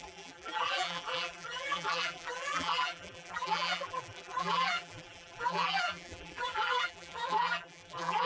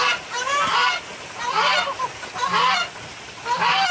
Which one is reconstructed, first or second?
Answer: first